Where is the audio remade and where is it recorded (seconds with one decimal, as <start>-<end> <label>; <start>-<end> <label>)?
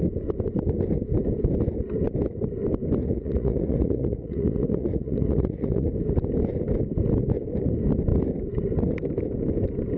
0.0-3.0 recorded; 3.0-5.9 remade; 5.9-10.0 recorded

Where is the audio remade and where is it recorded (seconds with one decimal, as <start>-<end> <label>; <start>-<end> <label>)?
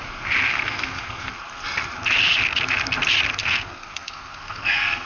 0.0-0.5 recorded; 0.5-1.3 remade; 1.3-3.4 recorded; 3.4-5.1 remade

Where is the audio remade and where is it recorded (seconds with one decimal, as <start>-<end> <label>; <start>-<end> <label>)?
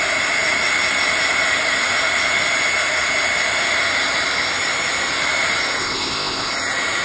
0.0-5.8 recorded; 5.8-6.5 remade; 6.5-7.0 recorded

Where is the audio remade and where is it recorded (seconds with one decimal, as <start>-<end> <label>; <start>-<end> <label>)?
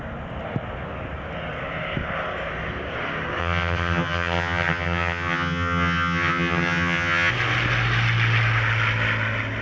0.0-3.4 recorded; 3.4-7.3 remade; 7.3-9.6 recorded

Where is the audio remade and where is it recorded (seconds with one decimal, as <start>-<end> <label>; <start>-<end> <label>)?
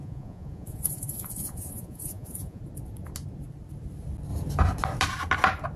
0.0-2.6 remade; 2.6-5.8 recorded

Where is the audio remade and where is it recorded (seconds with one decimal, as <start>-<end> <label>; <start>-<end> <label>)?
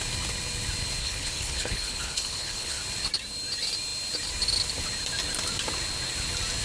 0.0-1.0 recorded; 1.0-2.8 remade; 2.8-6.6 recorded